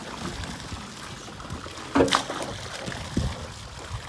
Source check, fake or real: real